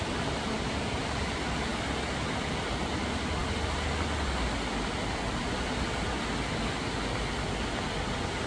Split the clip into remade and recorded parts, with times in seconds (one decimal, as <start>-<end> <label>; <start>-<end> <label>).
0.0-8.5 recorded